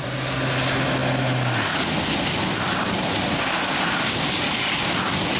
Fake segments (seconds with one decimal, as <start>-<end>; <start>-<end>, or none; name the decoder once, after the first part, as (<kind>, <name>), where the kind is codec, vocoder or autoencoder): none